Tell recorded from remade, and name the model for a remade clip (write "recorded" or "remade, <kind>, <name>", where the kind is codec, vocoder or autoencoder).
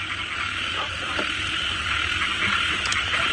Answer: recorded